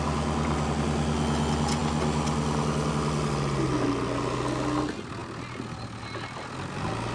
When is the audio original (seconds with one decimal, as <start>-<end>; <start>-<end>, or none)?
0.0-7.1